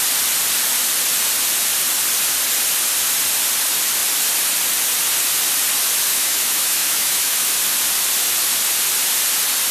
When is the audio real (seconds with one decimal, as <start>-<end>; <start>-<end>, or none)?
0.0-6.1; 7.6-9.7